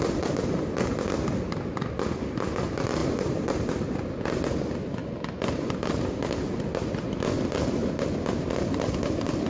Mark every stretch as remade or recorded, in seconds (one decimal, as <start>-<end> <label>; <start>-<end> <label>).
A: 0.0-3.0 recorded; 3.0-3.7 remade; 3.7-9.5 recorded